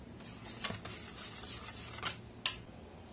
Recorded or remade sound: recorded